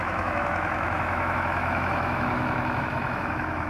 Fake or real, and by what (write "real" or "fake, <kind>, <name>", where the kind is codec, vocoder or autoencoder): fake, autoencoder, DAC-VAE